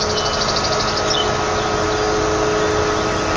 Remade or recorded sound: recorded